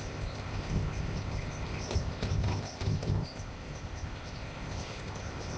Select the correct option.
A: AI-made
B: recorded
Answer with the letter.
A